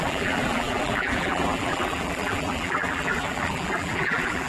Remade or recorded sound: remade